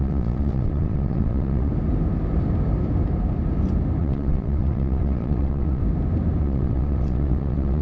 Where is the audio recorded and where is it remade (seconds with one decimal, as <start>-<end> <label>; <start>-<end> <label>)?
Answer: 0.0-1.7 remade; 1.7-4.0 recorded; 4.0-5.8 remade; 5.8-6.4 recorded; 6.4-7.8 remade